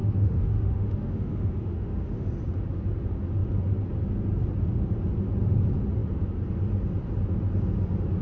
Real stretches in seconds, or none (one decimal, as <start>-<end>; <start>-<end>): 2.3-8.2